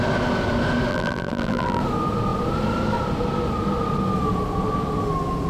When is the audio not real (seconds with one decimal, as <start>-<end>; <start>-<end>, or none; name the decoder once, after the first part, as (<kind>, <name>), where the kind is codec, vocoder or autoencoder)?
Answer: 0.9-1.8 (vocoder, BigVGAN v2)